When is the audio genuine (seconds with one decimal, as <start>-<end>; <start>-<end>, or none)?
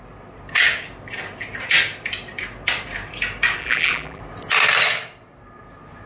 0.0-3.6; 4.2-6.1